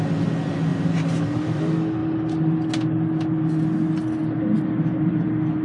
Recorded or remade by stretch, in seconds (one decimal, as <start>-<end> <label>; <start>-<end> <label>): 0.0-0.7 recorded; 0.7-1.6 remade; 1.6-5.6 recorded

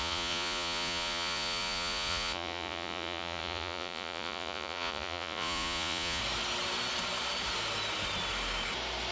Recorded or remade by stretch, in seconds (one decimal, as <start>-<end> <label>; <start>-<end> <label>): 0.0-6.2 remade; 6.2-9.1 recorded